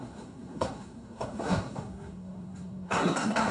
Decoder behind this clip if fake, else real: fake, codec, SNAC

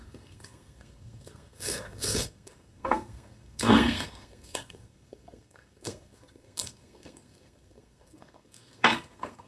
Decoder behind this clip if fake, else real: fake, codec, SNAC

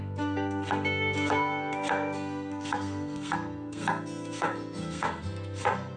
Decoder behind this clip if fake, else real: fake, codec, SNAC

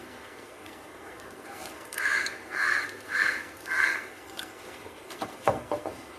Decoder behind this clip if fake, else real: fake, codec, SNAC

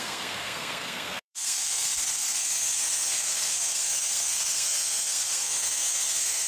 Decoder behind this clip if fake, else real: fake, codec, SNAC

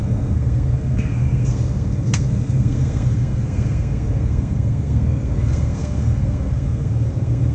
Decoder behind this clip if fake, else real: fake, codec, SNAC